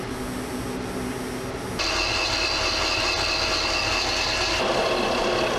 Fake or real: real